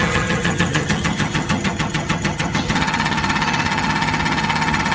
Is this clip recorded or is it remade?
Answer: remade